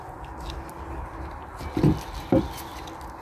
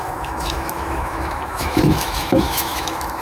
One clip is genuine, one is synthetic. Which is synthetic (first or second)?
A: second